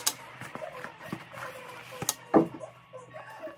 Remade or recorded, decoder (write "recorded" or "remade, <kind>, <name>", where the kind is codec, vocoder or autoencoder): recorded